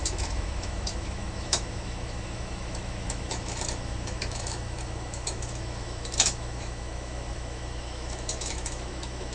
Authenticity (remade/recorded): remade